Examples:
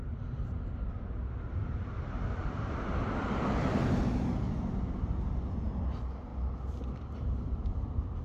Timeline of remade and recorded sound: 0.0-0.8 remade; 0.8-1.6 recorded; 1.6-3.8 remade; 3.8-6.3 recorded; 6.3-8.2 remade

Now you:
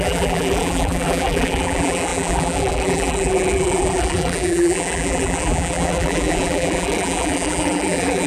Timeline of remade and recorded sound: 0.0-8.3 remade

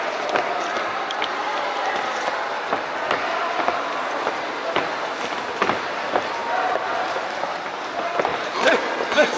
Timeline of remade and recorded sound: 0.0-6.4 recorded; 6.4-7.3 remade; 7.3-9.4 recorded